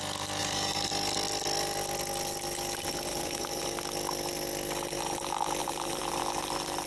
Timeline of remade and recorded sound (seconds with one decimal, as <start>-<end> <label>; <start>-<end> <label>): 0.0-0.4 recorded; 0.4-0.9 remade; 0.9-3.1 recorded; 3.1-3.7 remade; 3.7-5.6 recorded; 5.6-6.2 remade; 6.2-6.9 recorded